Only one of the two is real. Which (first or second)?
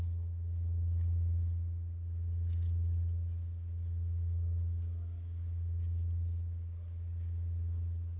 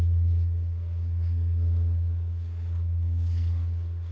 first